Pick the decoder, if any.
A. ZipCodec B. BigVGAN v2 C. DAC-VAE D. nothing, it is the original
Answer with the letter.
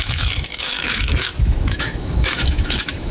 C